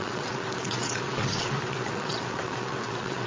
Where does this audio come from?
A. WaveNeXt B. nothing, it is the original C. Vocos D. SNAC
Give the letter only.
A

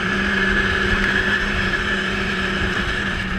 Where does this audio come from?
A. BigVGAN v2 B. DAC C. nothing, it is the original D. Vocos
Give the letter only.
A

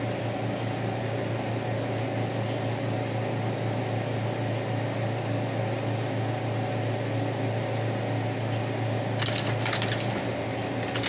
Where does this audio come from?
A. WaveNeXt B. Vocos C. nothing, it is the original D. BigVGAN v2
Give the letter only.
C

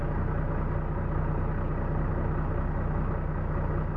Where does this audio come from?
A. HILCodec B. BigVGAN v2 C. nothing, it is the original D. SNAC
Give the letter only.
C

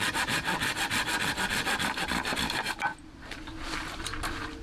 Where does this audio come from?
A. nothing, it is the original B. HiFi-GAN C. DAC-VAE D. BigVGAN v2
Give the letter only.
D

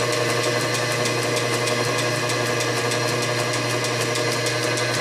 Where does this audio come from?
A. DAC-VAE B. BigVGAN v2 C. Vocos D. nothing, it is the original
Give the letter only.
D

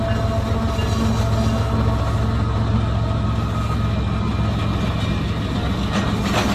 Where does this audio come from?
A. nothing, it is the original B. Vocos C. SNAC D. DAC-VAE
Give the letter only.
A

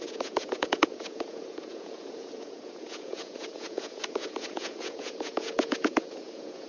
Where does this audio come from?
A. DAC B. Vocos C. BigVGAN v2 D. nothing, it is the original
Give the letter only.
B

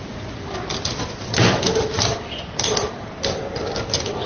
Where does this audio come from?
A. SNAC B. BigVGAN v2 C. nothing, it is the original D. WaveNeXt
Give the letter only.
B